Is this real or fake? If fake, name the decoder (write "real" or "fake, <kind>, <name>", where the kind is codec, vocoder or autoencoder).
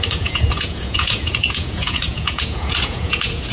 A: fake, vocoder, Vocos